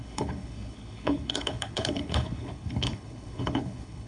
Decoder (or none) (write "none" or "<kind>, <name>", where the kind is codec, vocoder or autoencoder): codec, HILCodec